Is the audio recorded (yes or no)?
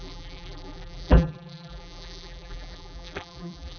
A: no